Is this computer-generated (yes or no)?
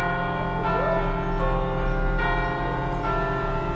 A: no